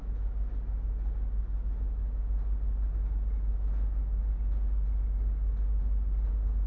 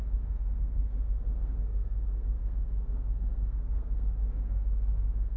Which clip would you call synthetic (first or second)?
second